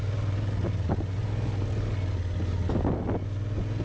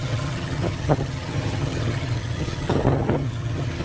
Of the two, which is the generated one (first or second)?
second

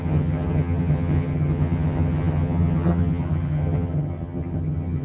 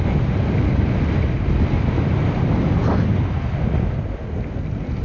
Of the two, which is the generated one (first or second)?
first